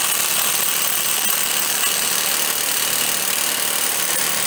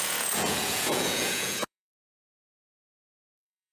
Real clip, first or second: first